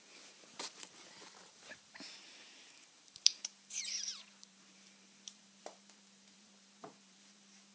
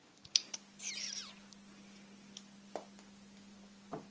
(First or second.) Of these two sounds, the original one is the second